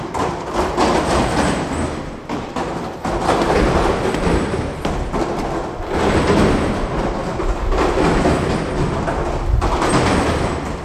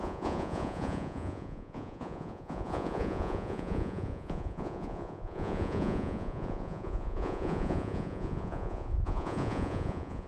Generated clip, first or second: second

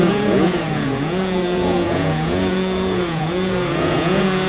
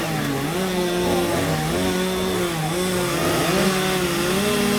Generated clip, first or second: first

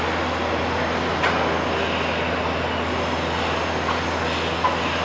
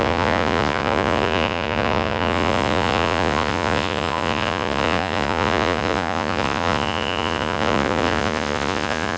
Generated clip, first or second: second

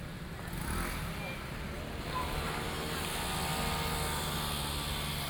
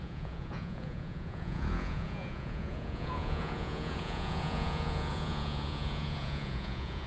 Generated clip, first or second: second